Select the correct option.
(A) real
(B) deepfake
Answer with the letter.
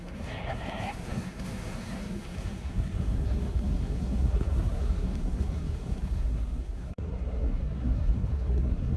B